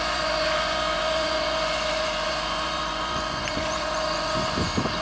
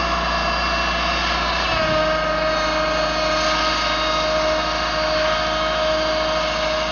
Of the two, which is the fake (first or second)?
first